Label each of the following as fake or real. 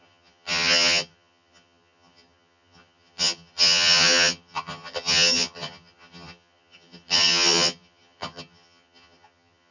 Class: fake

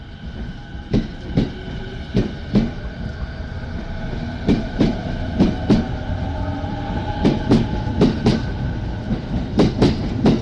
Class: real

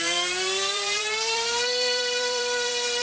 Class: fake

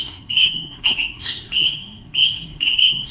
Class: fake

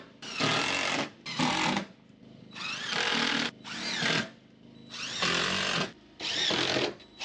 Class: real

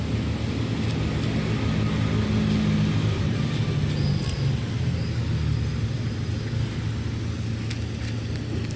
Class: real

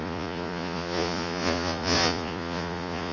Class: fake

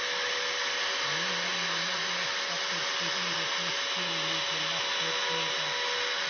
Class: real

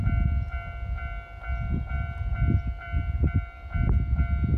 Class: real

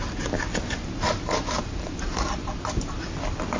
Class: real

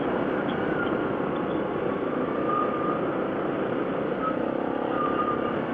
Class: real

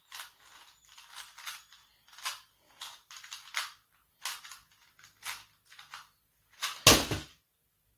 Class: real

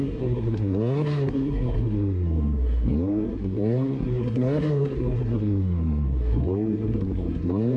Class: fake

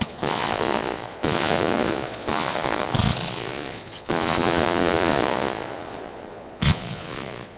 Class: fake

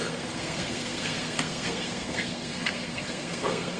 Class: fake